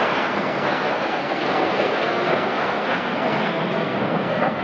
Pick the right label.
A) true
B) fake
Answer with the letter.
B